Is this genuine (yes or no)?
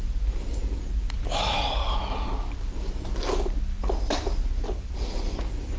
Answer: yes